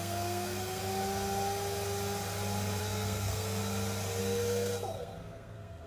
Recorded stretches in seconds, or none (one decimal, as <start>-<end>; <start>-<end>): 0.8-2.8; 3.6-4.2